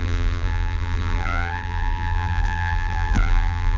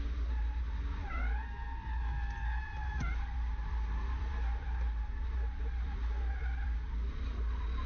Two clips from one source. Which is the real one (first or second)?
second